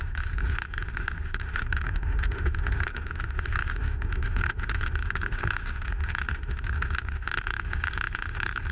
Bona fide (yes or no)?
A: no